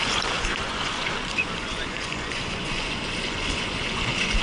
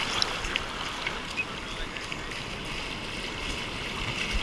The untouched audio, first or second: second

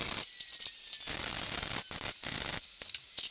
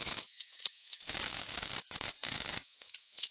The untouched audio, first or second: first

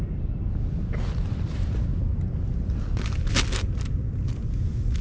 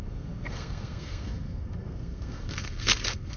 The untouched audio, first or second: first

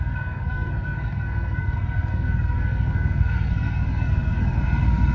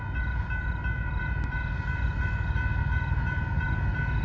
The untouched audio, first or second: second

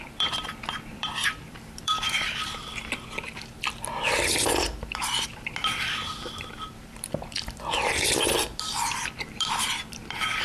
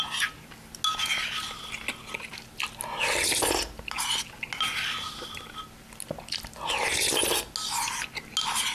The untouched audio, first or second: second